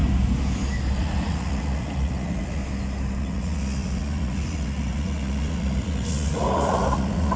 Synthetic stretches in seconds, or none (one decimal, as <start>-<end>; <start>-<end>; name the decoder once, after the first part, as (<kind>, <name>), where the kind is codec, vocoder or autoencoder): 1.0-2.6 (vocoder, Vocos); 3.2-7.4

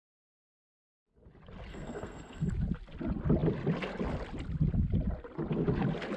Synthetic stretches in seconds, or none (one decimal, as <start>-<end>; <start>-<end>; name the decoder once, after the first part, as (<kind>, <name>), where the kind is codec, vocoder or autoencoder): 1.7-2.5 (codec, SNAC)

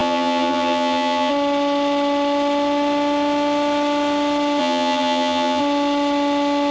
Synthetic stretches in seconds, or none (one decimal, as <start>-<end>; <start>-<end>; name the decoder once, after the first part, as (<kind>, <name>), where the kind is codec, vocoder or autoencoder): 0.0-1.3 (vocoder, HiFi-GAN); 4.6-5.6